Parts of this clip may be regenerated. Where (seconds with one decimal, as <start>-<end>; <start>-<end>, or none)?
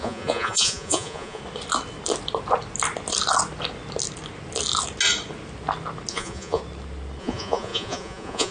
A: 0.0-1.4; 6.1-6.6; 7.2-8.5